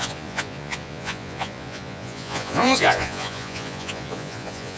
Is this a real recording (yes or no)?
no